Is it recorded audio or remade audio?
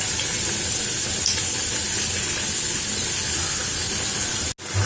recorded